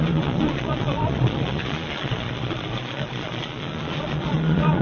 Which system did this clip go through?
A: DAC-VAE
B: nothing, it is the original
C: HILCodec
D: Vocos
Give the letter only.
D